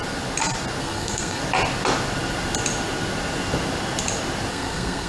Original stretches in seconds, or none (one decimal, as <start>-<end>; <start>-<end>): 0.0-0.8; 1.4-4.5